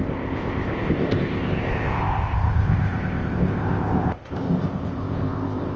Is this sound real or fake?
fake